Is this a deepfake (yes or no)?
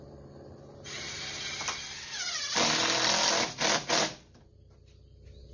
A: no